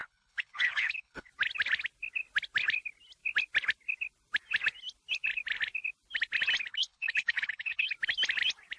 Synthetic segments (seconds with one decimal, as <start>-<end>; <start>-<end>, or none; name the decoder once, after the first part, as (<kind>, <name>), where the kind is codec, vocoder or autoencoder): 0.0-1.3 (codec, HILCodec); 6.7-7.9